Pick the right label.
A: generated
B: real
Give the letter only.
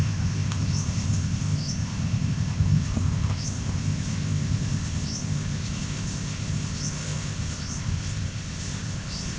A